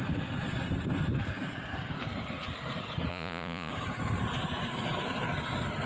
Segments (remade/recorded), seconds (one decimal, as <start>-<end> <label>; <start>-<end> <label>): 0.0-3.1 recorded; 3.1-3.7 remade; 3.7-5.9 recorded